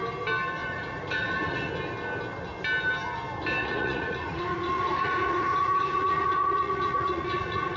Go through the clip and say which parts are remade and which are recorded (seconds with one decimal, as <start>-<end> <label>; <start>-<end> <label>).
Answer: 0.0-0.6 recorded; 0.6-1.7 remade; 1.7-3.6 recorded; 3.6-7.8 remade